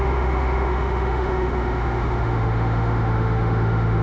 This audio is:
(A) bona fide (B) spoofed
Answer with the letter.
B